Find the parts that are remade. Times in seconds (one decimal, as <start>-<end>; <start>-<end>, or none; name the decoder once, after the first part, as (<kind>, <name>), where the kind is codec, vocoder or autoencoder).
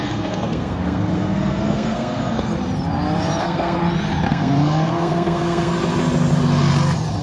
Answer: 0.0-2.5 (codec, SNAC); 3.4-3.8; 4.3-5.7